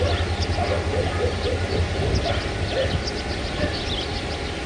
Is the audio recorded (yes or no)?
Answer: yes